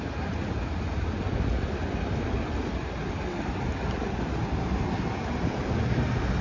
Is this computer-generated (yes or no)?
no